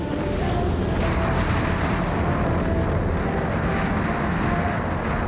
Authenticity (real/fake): real